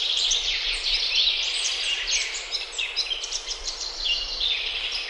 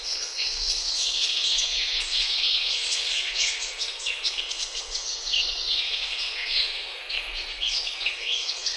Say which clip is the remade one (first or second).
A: second